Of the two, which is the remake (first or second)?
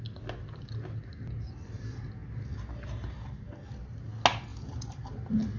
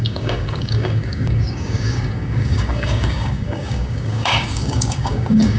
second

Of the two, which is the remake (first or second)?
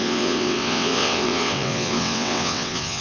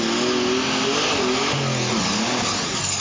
first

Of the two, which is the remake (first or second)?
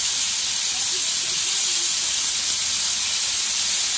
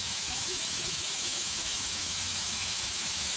second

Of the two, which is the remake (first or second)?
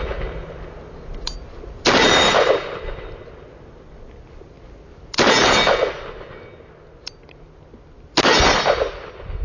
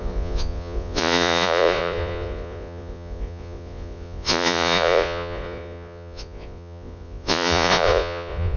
second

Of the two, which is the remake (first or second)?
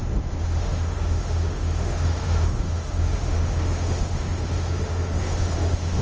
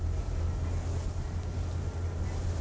first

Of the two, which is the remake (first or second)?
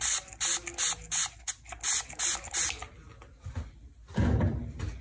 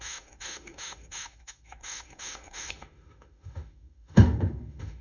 second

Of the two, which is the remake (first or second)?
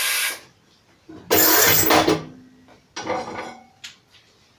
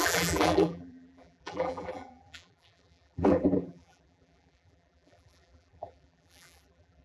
second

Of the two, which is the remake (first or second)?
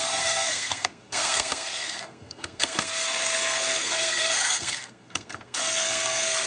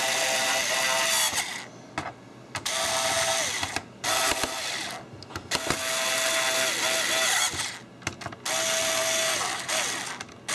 first